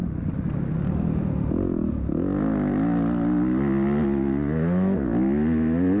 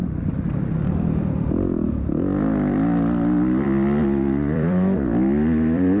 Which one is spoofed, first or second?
second